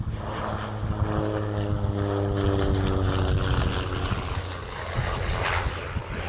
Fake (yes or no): no